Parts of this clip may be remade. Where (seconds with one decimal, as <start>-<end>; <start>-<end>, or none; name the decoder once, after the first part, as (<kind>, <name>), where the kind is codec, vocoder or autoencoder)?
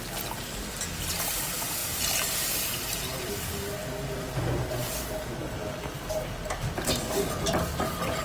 none